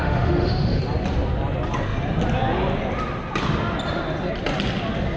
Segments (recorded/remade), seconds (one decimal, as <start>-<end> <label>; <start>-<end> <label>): 0.0-0.8 remade; 0.8-5.2 recorded